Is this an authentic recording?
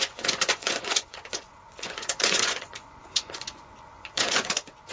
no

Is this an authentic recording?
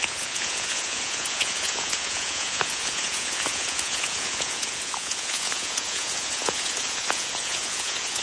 no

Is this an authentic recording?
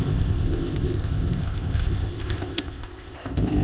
no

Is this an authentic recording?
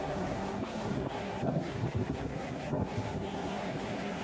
no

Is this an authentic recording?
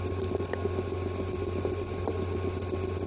yes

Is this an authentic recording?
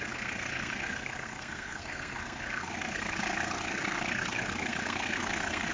no